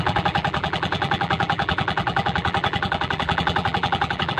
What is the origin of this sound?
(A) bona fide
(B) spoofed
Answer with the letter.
B